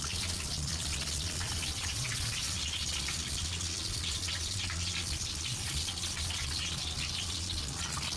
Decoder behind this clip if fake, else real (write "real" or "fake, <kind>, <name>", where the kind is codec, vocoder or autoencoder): fake, vocoder, Vocos